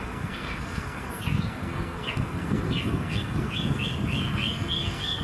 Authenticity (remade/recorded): remade